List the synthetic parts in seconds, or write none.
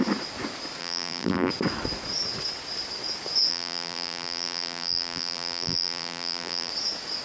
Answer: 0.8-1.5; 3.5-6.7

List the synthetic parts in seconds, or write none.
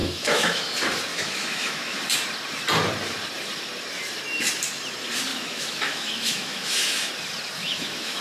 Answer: 0.0-0.7; 1.1-2.0; 5.3-7.1; 7.6-8.2